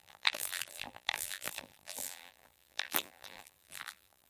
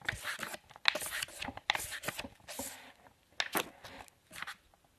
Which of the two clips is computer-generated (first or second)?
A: first